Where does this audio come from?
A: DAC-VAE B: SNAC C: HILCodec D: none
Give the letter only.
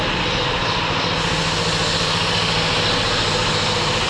D